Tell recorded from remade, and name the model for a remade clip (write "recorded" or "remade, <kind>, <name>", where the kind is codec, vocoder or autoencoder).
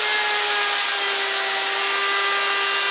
recorded